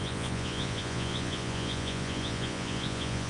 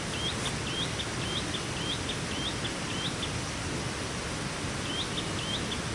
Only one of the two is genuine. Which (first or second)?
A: second